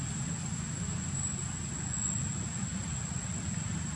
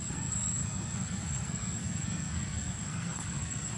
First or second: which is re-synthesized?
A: second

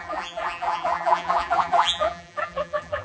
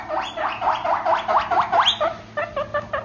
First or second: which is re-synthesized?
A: first